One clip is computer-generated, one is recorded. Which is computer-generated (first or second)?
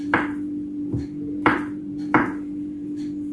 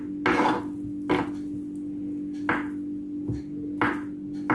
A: first